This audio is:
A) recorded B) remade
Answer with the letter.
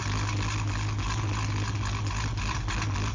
A